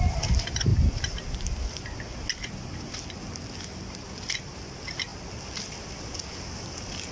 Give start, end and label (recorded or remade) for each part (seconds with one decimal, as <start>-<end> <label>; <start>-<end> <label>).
0.0-7.1 recorded